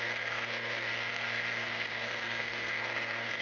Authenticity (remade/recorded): remade